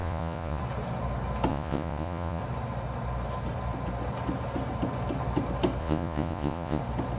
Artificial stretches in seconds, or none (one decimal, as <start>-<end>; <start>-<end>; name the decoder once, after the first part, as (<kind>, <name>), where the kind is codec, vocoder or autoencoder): 0.0-0.6 (vocoder, Vocos); 1.5-2.4; 5.8-6.8